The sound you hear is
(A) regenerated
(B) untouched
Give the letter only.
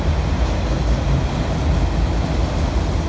B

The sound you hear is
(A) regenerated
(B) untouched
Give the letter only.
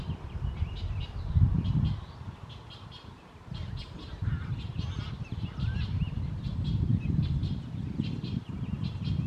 B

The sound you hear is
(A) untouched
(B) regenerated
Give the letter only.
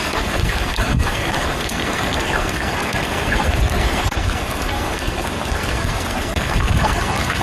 B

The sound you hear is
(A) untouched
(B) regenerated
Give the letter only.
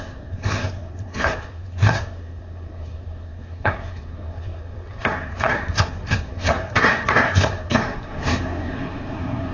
B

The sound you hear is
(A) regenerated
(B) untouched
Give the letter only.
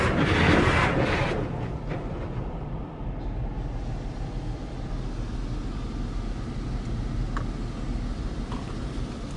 B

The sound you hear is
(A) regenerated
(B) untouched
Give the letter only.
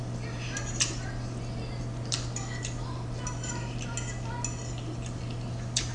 B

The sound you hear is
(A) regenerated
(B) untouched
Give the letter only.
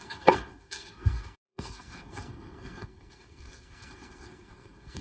A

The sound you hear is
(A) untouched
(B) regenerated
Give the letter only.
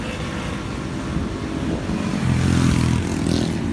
A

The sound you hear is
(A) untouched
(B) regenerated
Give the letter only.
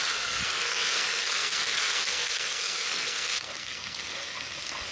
B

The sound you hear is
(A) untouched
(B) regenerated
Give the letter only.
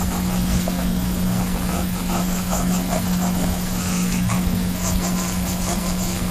B